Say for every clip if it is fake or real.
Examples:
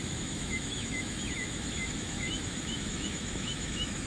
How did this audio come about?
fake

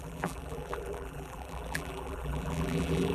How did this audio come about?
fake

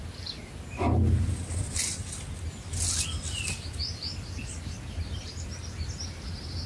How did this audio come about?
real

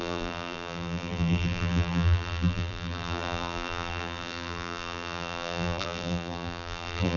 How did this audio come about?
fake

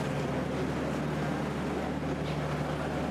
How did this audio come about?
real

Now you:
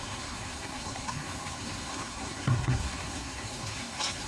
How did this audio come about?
fake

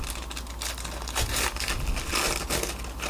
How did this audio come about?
real